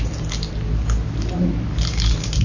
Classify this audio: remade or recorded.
recorded